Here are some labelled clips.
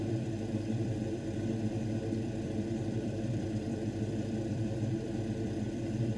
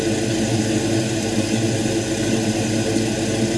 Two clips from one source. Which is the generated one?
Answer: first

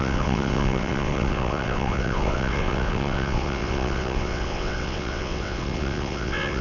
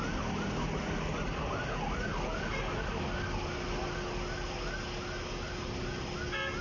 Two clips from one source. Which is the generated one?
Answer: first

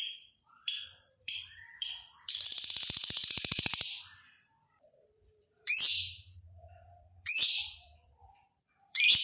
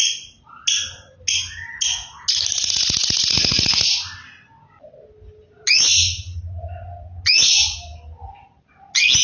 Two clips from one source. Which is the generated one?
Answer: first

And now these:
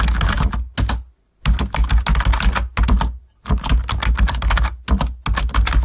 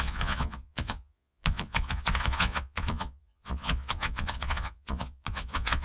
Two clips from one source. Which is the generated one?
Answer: second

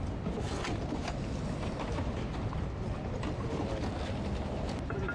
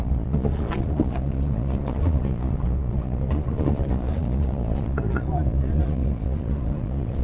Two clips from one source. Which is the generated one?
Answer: second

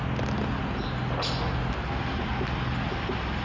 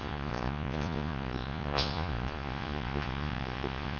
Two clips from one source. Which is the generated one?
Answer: second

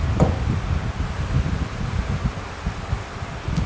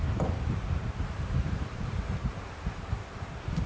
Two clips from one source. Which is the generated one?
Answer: second